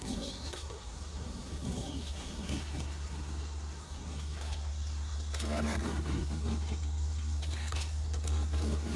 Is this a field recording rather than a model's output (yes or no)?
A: no